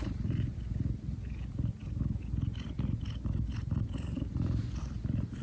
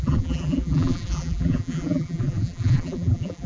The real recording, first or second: first